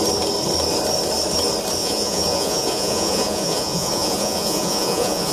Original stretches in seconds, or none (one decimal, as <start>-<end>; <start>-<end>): 0.0-1.8